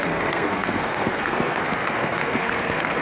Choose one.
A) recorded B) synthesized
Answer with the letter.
B